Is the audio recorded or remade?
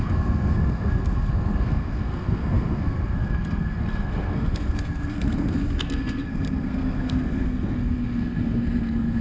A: remade